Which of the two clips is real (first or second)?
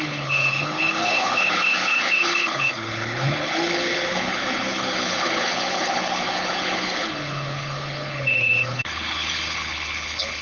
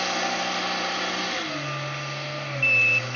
second